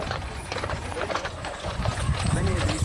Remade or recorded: remade